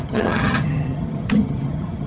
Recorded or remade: remade